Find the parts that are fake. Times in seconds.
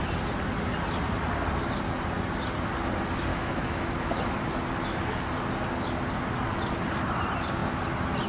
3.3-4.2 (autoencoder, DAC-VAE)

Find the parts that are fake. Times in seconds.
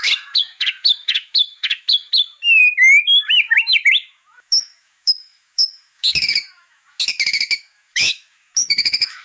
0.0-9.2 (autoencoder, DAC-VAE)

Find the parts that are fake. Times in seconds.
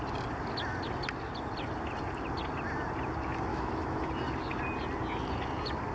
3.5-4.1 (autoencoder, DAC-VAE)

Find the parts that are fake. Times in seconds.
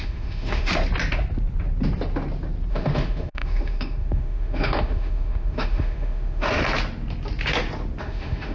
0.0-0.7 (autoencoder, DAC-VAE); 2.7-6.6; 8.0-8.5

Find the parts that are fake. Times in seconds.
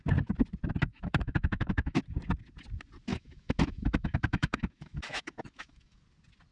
0.9-2.0 (autoencoder, DAC-VAE); 3.1-6.0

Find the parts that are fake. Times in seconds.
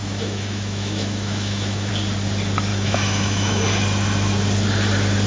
0.0-1.9 (autoencoder, DAC-VAE); 2.7-3.6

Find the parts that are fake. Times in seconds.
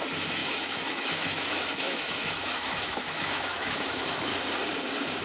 0.0-4.3 (autoencoder, DAC-VAE)